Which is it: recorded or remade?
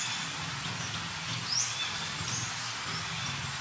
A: recorded